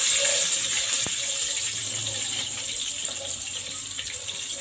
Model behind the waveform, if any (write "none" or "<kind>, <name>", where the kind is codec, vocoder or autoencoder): none